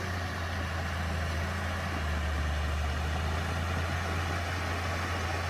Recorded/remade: recorded